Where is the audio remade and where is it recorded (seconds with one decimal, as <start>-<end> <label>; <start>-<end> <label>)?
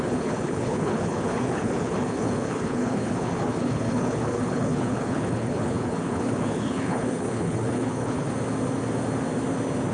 0.0-8.3 remade; 8.3-9.9 recorded